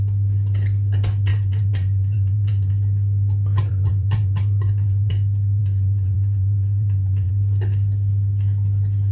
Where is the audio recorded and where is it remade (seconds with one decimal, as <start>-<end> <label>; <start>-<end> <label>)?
0.0-1.3 recorded; 1.3-2.7 remade; 2.7-3.7 recorded; 3.7-5.1 remade; 5.1-5.6 recorded; 5.6-7.3 remade; 7.3-9.1 recorded